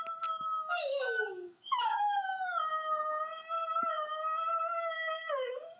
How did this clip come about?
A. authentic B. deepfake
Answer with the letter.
B